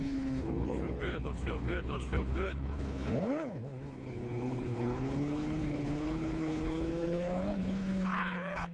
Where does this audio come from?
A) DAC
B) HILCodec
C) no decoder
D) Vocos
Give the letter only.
B